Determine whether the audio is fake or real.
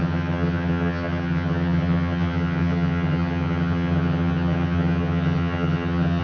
fake